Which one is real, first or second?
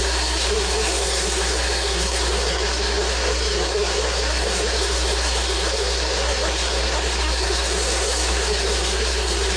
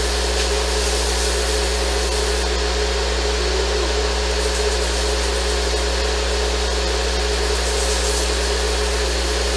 second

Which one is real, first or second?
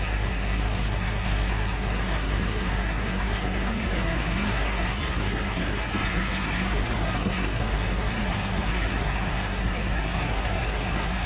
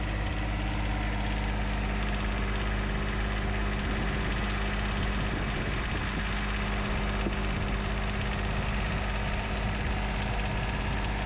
second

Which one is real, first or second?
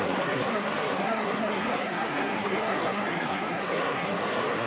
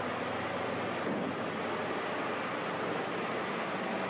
second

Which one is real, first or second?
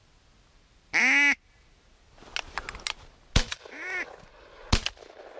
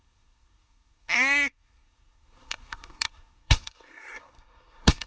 first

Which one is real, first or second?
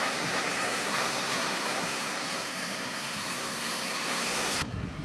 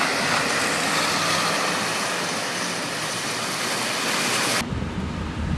second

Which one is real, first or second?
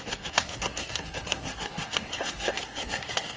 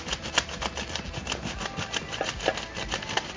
second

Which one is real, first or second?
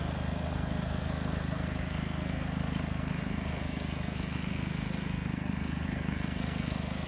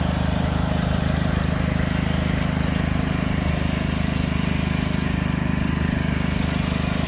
second